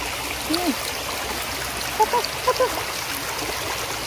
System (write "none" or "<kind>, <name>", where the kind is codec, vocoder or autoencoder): none